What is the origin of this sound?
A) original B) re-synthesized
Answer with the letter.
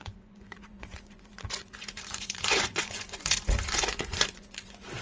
B